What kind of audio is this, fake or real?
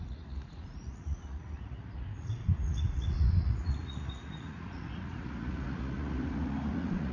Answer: fake